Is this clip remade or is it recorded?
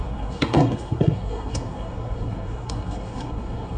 remade